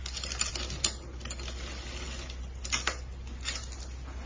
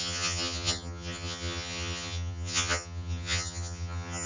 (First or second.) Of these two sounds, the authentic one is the first